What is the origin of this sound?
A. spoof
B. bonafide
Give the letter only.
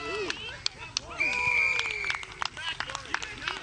B